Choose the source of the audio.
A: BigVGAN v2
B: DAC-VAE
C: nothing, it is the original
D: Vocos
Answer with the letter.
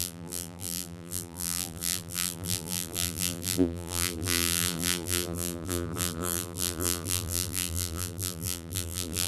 A